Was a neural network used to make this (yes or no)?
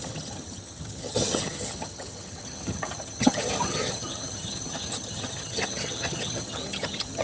yes